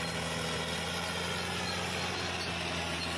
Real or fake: real